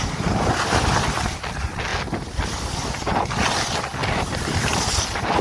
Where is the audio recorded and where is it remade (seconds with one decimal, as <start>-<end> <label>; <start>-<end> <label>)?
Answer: 0.0-5.4 recorded